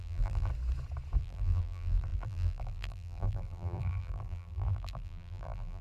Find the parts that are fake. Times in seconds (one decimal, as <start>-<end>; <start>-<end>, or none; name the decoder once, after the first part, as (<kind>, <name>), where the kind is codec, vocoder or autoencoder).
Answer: 0.0-0.5 (vocoder, BigVGAN v2); 1.2-5.8